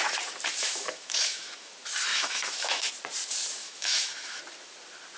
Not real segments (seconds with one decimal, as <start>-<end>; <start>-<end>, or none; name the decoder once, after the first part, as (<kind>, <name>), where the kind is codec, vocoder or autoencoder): 0.6-1.7 (autoencoder, DAC-VAE); 2.1-2.9; 3.6-4.4